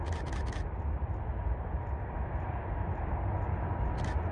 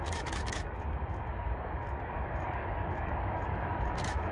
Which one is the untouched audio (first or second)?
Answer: first